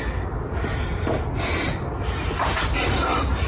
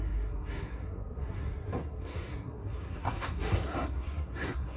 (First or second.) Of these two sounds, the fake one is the second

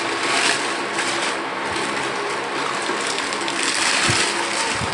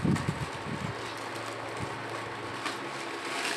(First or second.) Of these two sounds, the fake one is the first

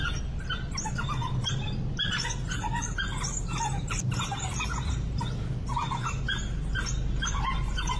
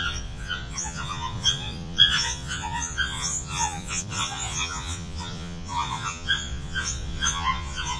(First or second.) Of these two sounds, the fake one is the second